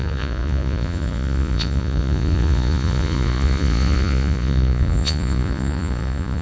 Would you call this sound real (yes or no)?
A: no